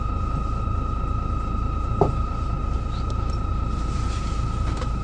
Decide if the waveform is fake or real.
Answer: real